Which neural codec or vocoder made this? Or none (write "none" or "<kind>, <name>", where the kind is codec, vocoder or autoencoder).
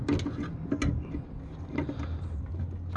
none